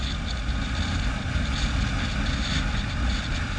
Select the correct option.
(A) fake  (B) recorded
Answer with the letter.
B